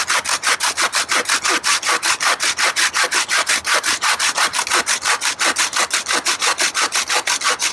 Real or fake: real